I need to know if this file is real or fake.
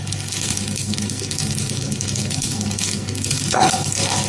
fake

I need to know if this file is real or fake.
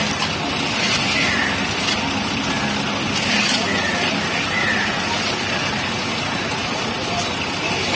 real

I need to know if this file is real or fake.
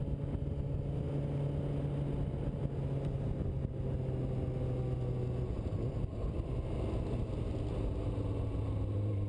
real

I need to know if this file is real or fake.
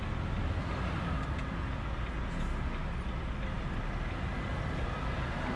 real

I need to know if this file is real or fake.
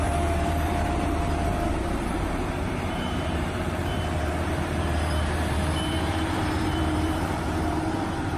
fake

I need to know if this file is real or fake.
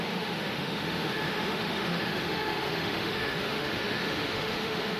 fake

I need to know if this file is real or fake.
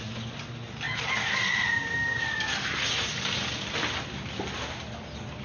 real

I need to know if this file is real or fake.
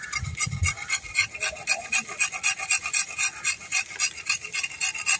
real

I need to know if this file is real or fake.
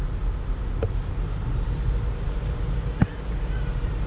real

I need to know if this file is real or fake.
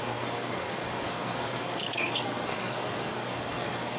fake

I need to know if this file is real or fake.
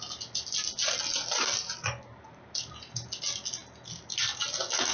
real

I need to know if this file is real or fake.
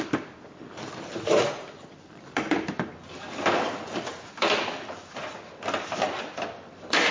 real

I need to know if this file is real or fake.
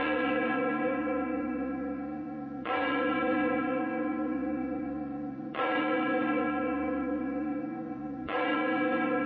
fake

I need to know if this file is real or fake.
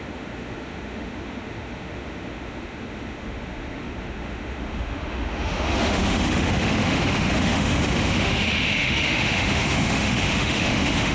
fake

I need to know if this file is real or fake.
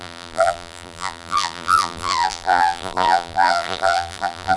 fake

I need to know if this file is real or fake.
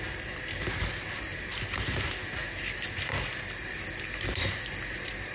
real